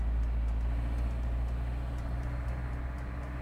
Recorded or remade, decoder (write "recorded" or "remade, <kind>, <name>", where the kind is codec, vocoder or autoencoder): recorded